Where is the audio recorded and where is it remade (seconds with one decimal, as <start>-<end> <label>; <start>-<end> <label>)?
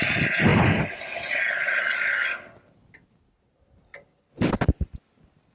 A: 0.0-5.5 recorded